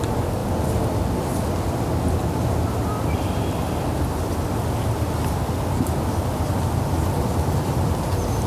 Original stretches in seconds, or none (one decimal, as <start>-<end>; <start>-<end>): 0.0-8.5